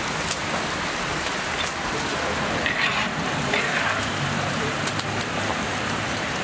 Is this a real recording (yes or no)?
no